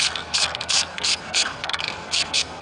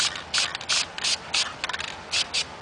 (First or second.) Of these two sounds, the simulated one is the first